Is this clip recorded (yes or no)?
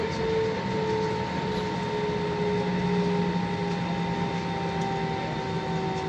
yes